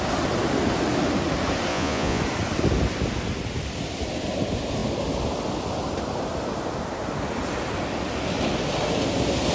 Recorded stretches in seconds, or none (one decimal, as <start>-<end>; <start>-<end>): 0.0-1.7; 2.2-9.5